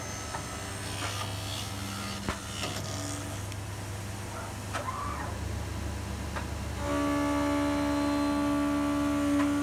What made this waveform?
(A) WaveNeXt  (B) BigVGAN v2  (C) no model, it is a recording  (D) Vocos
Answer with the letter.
C